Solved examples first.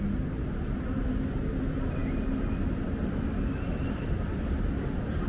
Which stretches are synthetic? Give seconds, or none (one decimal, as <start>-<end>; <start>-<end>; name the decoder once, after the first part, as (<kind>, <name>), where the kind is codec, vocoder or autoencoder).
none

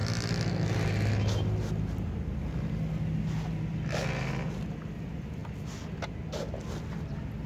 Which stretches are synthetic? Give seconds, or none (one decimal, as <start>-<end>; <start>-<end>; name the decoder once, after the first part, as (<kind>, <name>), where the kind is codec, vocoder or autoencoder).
none

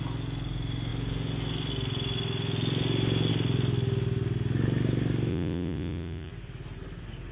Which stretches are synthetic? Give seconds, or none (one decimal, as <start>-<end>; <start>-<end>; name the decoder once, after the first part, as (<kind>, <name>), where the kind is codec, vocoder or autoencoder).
5.3-6.3 (vocoder, Vocos)